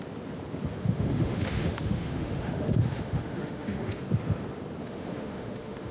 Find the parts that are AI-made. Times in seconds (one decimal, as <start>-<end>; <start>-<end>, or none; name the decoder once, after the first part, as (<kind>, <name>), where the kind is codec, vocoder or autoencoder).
0.8-4.0 (autoencoder, DAC-VAE); 4.8-5.9